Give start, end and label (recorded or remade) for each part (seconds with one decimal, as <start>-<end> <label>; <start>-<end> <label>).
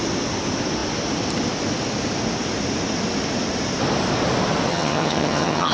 0.0-4.7 recorded; 4.7-5.7 remade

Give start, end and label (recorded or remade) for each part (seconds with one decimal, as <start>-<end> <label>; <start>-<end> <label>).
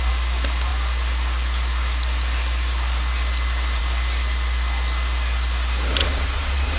0.0-6.0 recorded; 6.0-6.8 remade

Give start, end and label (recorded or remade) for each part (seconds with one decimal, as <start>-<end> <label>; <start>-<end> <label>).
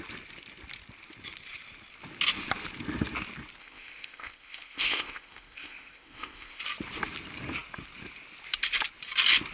0.0-3.6 recorded; 3.6-6.6 remade; 6.6-9.5 recorded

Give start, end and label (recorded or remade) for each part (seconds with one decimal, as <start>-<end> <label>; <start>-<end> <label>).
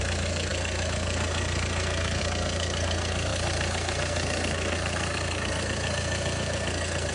0.0-7.1 remade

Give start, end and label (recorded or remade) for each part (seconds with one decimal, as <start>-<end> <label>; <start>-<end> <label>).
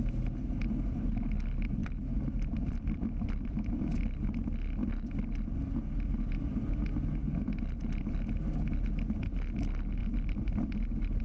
0.0-1.8 recorded; 1.8-4.3 remade; 4.3-10.0 recorded; 10.0-11.2 remade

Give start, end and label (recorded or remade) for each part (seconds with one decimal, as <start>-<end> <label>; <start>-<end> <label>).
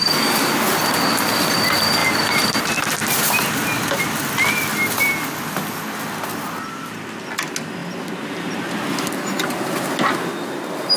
0.0-2.0 recorded; 2.0-3.4 remade; 3.4-11.0 recorded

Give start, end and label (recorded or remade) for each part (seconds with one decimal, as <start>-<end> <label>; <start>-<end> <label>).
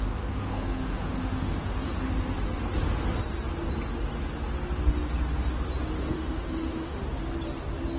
0.0-1.9 remade; 1.9-6.0 recorded; 6.0-7.0 remade; 7.0-8.0 recorded